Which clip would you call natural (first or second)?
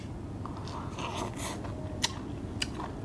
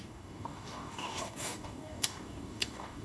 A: first